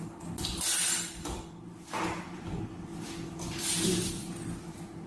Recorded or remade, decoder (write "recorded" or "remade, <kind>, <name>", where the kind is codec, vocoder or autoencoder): remade, vocoder, BigVGAN v2